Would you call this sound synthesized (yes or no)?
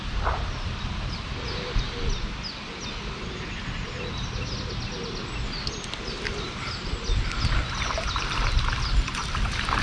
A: no